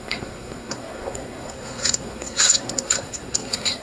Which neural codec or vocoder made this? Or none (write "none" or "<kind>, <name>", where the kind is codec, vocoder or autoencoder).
codec, SNAC